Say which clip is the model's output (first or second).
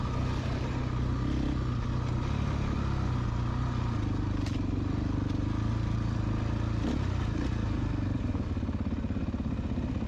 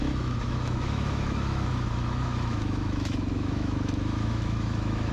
second